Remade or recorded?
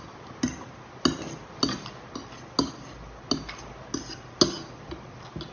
recorded